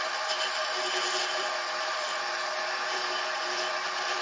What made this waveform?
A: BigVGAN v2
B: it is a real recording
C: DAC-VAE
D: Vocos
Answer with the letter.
A